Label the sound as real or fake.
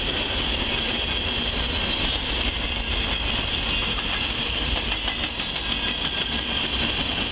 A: real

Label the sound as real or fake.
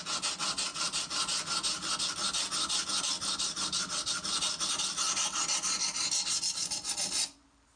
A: real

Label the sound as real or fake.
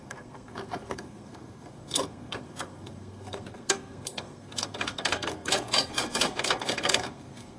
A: fake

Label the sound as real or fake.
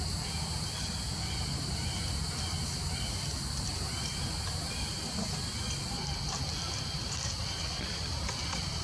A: real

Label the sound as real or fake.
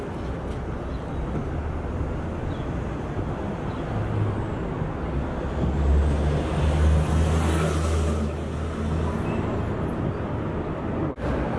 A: real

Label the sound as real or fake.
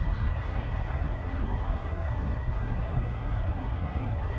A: fake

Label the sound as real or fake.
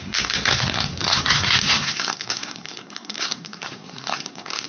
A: fake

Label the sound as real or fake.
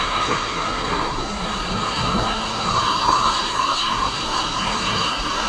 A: fake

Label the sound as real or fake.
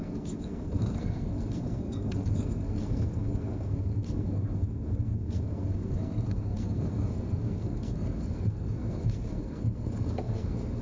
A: fake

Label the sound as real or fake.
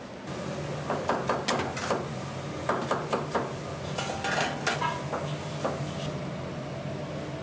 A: real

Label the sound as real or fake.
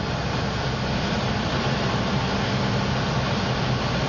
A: real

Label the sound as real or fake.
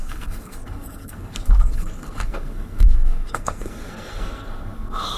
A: fake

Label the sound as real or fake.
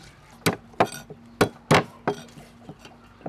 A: real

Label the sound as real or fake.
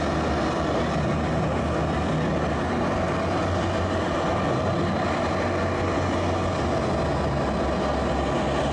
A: real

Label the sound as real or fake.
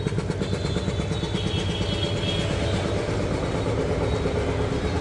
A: real